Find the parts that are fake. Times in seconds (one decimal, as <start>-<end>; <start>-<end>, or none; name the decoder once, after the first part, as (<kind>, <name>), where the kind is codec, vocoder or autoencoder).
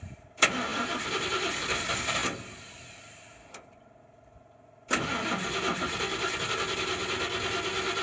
none